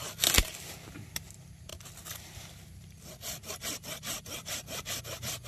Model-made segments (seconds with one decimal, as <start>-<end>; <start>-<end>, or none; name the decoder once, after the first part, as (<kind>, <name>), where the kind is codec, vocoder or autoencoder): 1.7-5.0 (vocoder, BigVGAN v2)